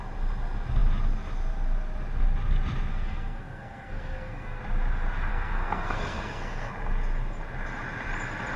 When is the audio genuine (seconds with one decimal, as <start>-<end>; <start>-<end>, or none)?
0.0-2.9; 4.6-5.3; 6.7-8.6